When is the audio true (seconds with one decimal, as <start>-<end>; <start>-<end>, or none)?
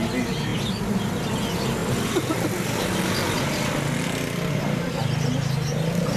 0.0-0.5; 1.4-6.2